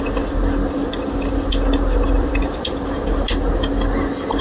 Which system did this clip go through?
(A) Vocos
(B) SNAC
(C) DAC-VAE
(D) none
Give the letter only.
D